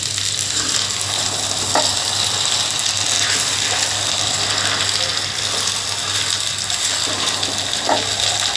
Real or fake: real